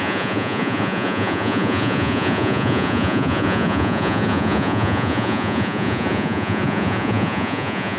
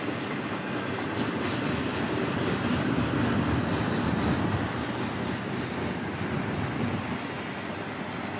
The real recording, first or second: second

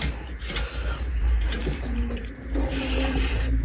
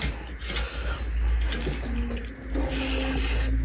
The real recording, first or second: second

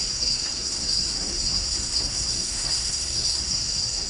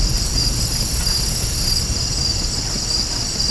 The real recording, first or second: second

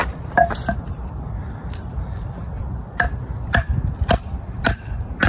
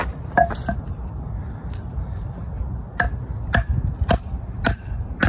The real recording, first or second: second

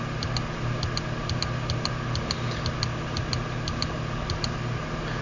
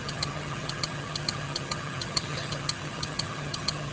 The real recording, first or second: first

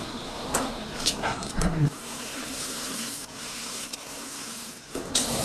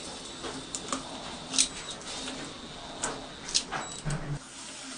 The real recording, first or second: second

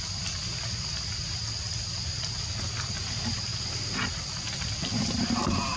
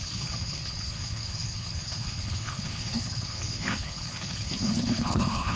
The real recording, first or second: first